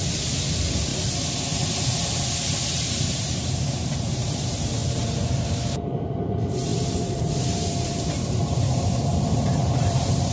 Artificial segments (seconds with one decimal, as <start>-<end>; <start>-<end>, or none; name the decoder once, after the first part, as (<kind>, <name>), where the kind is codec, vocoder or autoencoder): 0.0-0.9 (vocoder, BigVGAN v2); 2.7-10.3